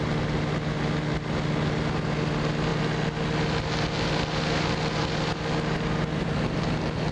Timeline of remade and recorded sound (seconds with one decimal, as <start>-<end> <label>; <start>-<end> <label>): 0.0-7.1 recorded